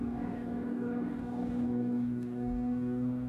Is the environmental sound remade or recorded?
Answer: remade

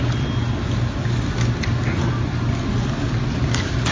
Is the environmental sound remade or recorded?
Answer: recorded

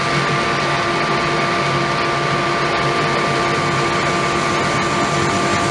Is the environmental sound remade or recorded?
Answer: recorded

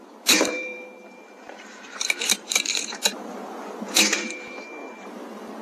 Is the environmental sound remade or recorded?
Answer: remade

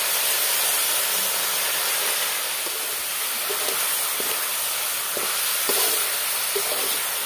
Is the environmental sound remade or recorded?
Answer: recorded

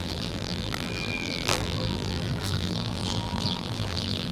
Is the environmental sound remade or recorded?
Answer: remade